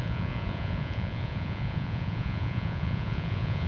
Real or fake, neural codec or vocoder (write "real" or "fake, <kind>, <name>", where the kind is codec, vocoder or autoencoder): fake, vocoder, Vocos